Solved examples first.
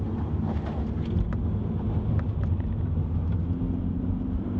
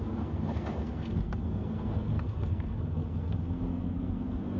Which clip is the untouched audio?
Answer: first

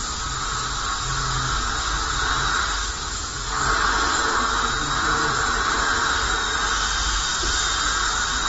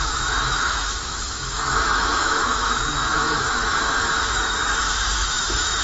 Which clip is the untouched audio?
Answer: first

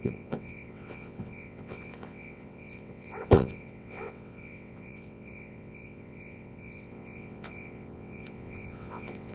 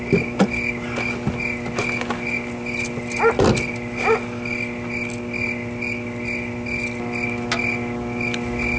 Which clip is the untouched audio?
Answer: second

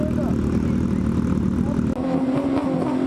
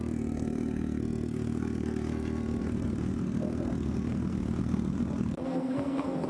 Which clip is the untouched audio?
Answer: first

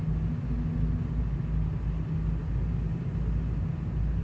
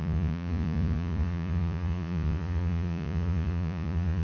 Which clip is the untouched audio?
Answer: first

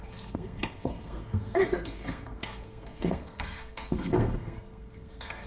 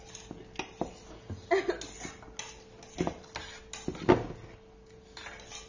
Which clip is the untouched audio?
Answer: second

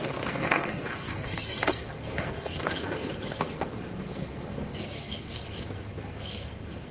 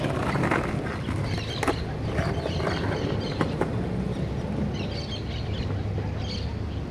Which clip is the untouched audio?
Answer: second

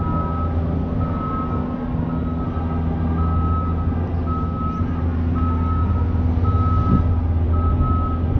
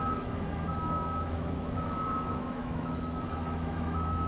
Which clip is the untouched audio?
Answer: first